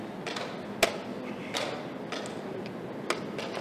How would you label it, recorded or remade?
recorded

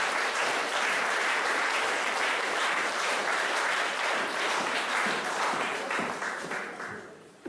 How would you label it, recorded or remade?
remade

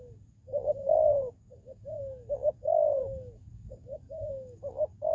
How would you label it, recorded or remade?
remade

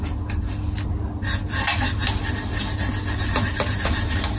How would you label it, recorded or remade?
recorded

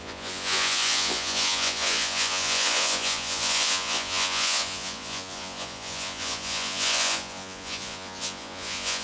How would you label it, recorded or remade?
remade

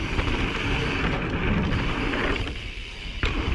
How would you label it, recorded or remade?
remade